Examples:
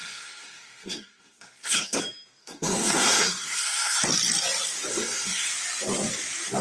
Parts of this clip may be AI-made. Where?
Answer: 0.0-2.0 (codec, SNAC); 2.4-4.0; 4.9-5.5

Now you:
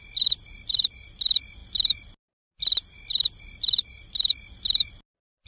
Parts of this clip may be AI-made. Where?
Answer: none